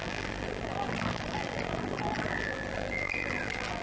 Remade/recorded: remade